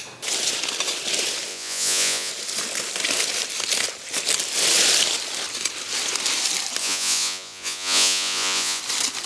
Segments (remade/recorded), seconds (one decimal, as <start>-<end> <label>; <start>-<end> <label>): 0.0-1.5 recorded; 1.5-2.3 remade; 2.3-6.8 recorded; 6.8-8.8 remade; 8.8-9.3 recorded